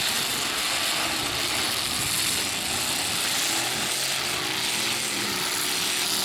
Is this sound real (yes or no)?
yes